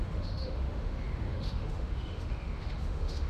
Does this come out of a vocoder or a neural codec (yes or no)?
yes